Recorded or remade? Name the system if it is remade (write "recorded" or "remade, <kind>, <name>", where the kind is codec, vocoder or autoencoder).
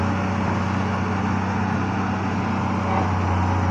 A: recorded